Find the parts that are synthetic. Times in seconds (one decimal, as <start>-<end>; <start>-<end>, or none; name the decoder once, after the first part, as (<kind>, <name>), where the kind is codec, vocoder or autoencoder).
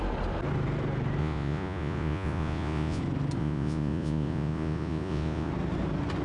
1.2-3.0 (vocoder, Vocos); 3.4-5.5